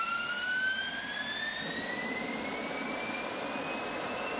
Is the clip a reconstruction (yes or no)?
no